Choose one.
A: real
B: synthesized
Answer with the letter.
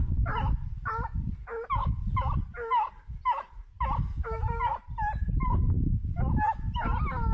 A